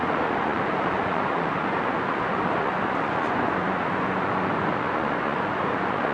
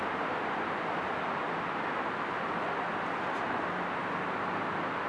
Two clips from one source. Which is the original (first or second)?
second